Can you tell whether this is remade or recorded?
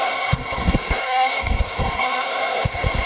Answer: remade